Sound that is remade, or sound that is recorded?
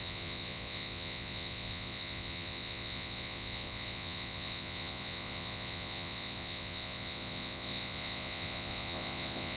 remade